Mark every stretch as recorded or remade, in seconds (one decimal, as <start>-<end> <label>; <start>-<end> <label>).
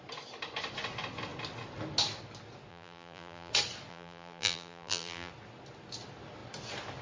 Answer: 0.0-2.7 recorded; 2.7-3.5 remade; 3.5-3.9 recorded; 3.9-5.3 remade; 5.3-7.0 recorded